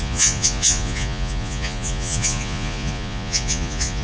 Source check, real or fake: fake